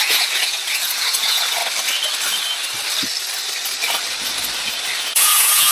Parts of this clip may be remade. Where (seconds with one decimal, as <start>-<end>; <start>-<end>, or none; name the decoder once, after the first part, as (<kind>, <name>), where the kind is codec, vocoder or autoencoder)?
0.0-1.6 (vocoder, Vocos); 5.0-5.7